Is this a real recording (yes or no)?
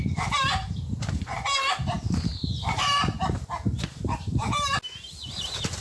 no